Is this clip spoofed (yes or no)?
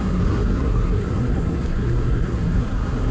yes